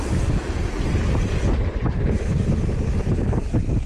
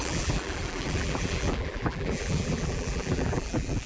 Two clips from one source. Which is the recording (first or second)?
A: first